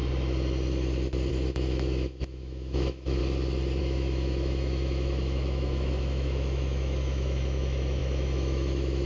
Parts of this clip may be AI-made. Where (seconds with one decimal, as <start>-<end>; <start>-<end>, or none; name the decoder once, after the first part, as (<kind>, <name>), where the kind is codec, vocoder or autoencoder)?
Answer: 1.3-3.2 (autoencoder, DAC-VAE); 3.8-9.1